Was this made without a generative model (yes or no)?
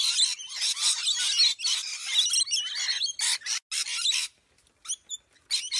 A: yes